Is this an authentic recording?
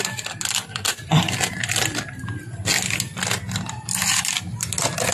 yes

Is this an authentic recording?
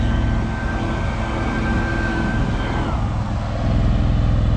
yes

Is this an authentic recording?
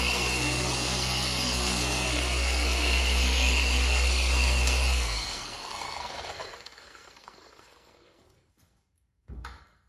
no